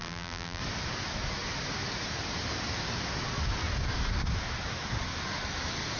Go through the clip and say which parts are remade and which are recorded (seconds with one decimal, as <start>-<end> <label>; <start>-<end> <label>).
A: 0.0-0.6 remade; 0.6-6.0 recorded